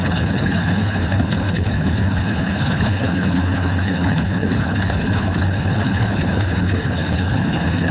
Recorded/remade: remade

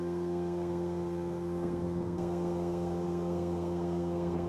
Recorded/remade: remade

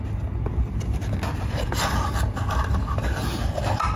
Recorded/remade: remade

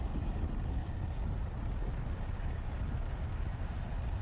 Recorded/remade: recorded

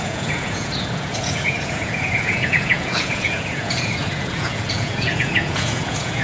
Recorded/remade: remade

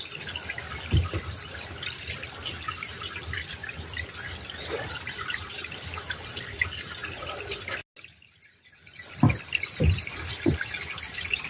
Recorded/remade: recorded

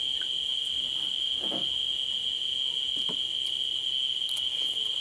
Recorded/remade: recorded